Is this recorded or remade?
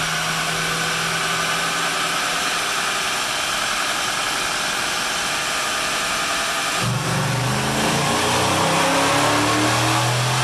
recorded